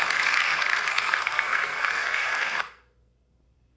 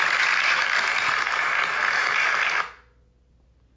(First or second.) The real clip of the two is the second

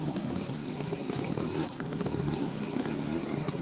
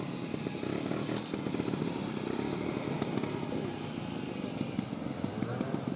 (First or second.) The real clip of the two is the second